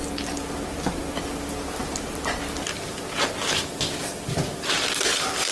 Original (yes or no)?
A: yes